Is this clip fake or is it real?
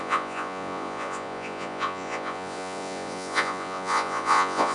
fake